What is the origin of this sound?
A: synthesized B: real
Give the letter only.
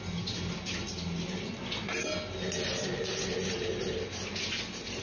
B